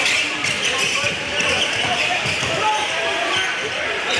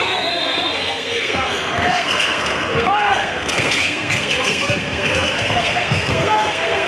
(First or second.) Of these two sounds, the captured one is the first